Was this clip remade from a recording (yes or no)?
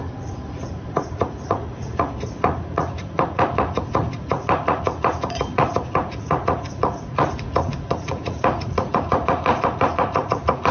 yes